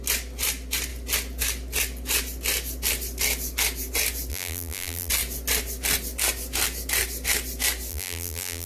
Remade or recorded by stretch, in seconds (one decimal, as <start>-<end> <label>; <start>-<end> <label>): 0.0-4.3 recorded; 4.3-5.1 remade; 5.1-7.9 recorded; 7.9-8.7 remade

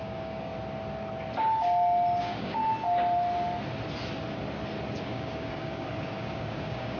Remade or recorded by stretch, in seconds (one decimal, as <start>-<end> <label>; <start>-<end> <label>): 0.0-0.5 remade; 0.5-2.2 recorded; 2.2-2.6 remade; 2.6-5.0 recorded; 5.0-7.0 remade

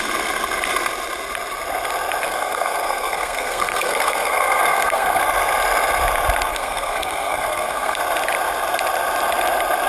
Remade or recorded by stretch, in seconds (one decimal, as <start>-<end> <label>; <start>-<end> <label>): 0.0-2.2 recorded; 2.2-5.2 remade; 5.2-6.5 recorded; 6.5-8.0 remade; 8.0-9.9 recorded

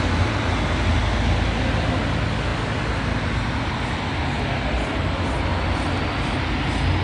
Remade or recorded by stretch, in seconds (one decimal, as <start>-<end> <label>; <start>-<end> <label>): 0.0-7.0 recorded

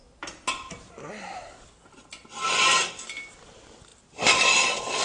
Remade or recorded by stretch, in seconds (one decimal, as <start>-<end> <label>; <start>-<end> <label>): 0.0-5.0 recorded